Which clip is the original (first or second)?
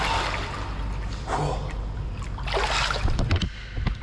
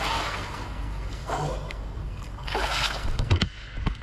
first